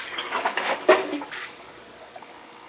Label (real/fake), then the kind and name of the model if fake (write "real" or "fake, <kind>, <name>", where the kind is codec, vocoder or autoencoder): fake, codec, DAC